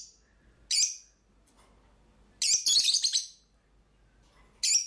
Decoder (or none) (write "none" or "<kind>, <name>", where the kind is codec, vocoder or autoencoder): none